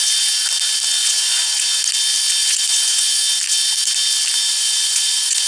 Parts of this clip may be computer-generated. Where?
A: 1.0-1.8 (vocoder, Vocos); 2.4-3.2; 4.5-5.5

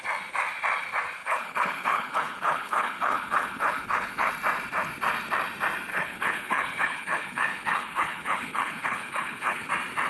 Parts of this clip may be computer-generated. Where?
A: 1.2-4.3 (codec, HILCodec); 5.9-9.7

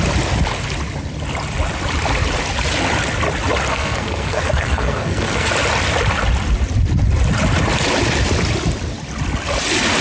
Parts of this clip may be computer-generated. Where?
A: 3.7-5.5 (codec, SNAC)

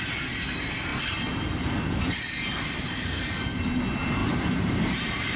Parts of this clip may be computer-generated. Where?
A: 4.2-4.9 (vocoder, BigVGAN v2)